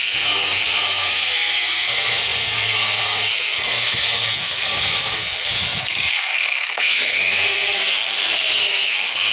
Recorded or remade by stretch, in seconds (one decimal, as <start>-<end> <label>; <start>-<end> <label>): 0.0-9.3 remade